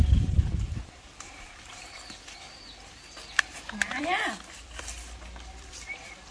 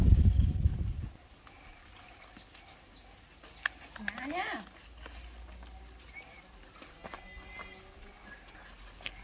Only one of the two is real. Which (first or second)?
second